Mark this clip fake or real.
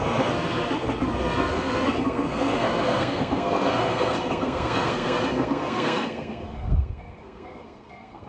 fake